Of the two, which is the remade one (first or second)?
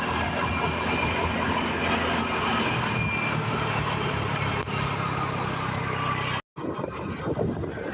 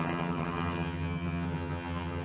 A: second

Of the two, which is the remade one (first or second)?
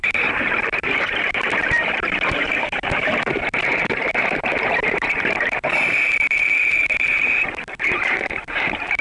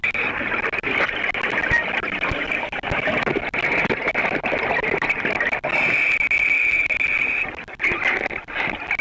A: first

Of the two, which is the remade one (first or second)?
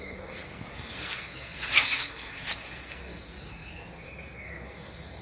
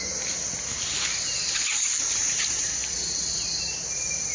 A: first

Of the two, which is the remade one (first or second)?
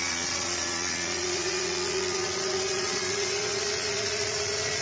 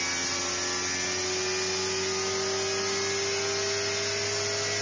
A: first